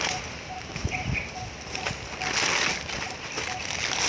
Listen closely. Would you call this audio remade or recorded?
recorded